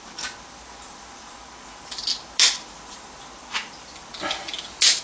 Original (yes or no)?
yes